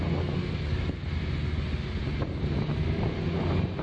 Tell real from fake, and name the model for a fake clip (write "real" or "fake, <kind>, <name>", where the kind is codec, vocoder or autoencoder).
real